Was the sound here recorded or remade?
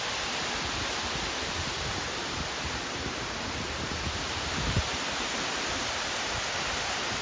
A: recorded